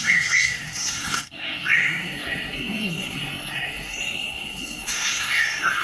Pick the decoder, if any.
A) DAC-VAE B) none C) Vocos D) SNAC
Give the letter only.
D